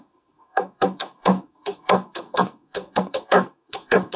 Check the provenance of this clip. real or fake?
fake